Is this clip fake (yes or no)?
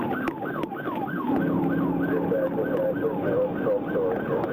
no